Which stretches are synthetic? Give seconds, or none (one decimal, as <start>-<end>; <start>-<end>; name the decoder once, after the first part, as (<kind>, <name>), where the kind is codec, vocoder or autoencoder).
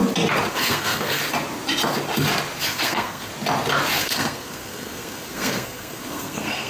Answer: 0.5-1.2 (codec, SNAC); 2.6-3.3; 4.0-6.7